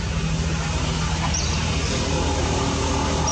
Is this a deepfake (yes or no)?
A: no